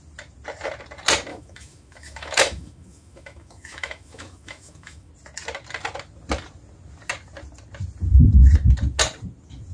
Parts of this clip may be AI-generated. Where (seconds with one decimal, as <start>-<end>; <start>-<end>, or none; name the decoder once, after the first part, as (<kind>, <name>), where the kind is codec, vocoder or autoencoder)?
1.3-5.1 (autoencoder, DAC-VAE)